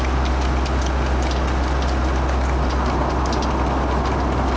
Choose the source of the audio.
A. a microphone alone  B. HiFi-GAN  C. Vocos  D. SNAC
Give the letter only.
A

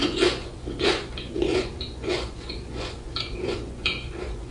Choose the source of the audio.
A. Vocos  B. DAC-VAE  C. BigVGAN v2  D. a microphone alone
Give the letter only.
A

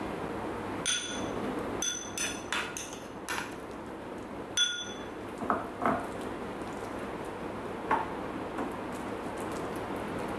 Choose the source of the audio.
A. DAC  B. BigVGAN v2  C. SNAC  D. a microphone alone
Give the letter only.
D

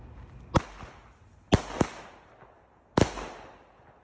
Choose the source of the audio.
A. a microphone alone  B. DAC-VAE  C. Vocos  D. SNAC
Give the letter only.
A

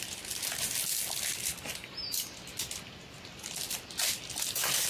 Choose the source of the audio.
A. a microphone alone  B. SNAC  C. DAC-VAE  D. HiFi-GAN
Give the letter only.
A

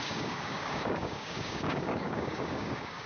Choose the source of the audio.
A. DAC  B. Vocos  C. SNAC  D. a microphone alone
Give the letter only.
A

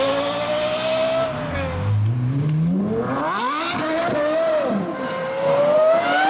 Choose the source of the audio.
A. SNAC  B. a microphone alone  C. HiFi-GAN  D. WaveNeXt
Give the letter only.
B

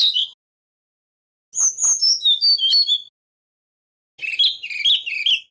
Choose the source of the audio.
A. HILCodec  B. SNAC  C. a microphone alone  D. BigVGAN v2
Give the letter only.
C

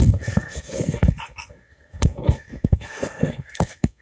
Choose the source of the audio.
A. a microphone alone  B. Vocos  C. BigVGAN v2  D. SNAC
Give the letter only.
D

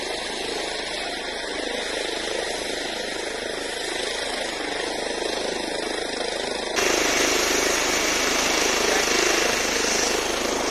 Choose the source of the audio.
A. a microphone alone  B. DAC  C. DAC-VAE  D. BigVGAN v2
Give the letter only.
A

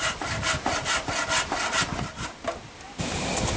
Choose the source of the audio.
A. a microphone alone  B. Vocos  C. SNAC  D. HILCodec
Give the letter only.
A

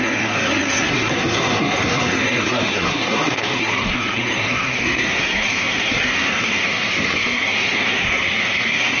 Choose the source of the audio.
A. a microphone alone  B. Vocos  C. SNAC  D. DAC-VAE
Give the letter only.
C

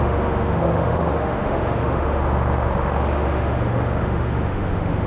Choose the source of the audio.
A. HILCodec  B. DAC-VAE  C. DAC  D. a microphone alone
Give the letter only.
B